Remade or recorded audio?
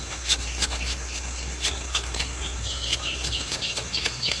remade